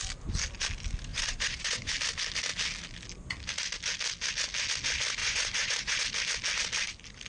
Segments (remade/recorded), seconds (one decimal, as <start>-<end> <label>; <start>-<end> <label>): 0.0-1.1 recorded; 1.1-1.9 remade; 1.9-5.2 recorded; 5.2-6.0 remade; 6.0-7.3 recorded